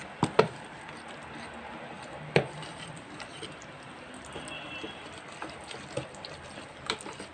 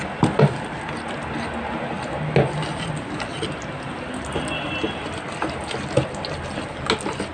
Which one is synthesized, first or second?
first